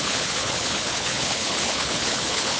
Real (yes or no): no